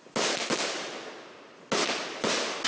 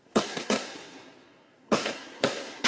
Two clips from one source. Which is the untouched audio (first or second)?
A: first